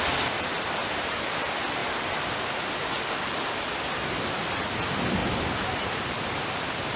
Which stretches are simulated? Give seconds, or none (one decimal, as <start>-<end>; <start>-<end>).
5.2-7.0